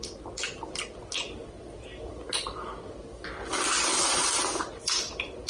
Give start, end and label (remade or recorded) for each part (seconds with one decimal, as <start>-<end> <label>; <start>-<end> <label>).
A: 0.0-5.5 recorded